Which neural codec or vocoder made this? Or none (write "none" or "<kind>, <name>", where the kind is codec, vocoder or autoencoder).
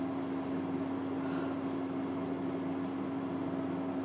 none